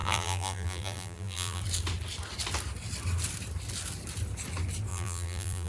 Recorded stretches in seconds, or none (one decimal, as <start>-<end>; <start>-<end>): 1.6-4.9